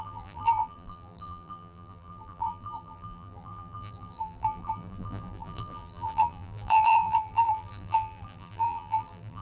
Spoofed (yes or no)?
yes